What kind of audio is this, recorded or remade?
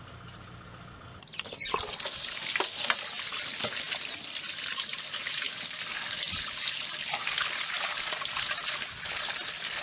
recorded